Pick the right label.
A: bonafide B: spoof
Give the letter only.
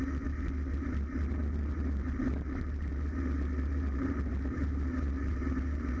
A